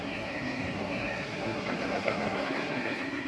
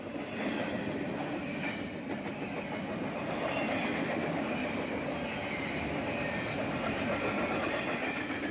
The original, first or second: second